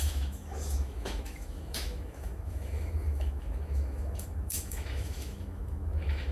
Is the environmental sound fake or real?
fake